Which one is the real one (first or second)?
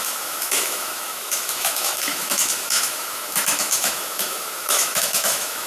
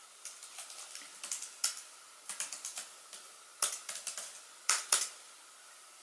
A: second